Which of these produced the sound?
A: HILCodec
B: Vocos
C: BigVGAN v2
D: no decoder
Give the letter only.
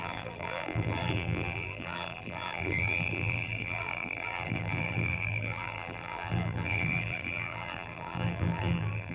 C